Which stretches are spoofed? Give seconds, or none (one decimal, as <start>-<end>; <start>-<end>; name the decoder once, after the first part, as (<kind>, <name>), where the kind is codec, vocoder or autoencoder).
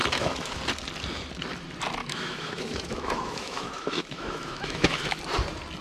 0.0-0.6 (autoencoder, DAC-VAE); 2.0-5.2